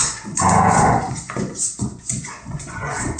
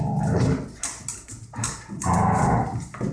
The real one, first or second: second